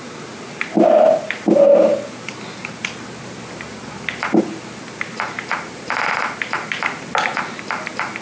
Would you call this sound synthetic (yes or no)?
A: no